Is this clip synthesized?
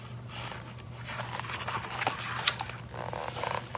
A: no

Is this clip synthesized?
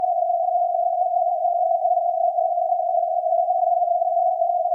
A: no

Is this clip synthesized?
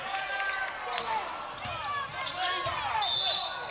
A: no